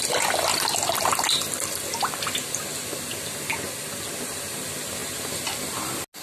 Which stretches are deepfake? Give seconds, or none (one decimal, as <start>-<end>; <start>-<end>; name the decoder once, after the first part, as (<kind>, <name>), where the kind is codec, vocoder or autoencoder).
none